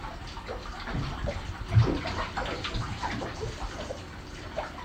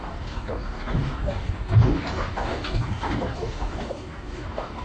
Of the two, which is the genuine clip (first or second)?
first